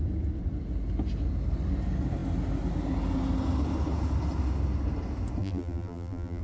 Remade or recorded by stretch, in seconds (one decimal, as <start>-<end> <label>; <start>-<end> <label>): 0.0-5.4 recorded; 5.4-6.4 remade